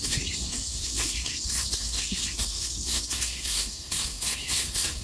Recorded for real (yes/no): no